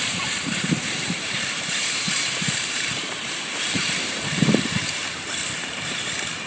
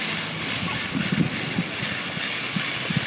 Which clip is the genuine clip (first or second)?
second